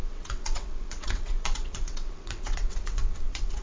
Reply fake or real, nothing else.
fake